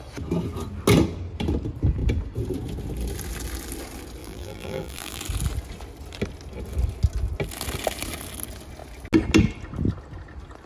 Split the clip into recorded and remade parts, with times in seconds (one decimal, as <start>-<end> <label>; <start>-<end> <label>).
0.0-4.2 recorded; 4.2-5.2 remade; 5.2-10.7 recorded